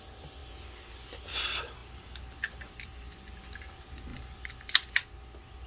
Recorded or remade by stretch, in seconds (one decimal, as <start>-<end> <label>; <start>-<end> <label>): 0.0-5.7 recorded